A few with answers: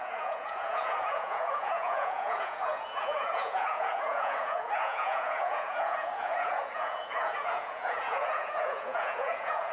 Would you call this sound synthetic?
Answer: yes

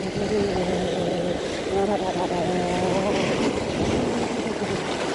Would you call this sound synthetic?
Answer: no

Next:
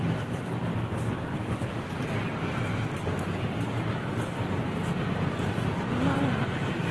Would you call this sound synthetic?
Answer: no